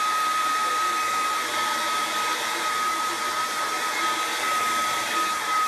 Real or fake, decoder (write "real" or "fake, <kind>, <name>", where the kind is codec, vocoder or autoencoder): fake, vocoder, BigVGAN v2